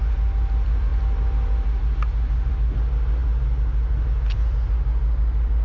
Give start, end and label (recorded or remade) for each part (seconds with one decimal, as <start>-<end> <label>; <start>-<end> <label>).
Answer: 0.0-5.6 recorded